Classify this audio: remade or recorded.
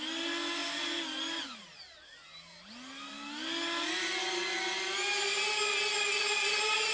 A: recorded